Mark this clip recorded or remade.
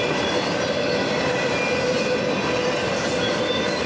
recorded